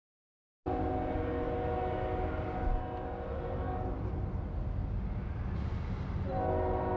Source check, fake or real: real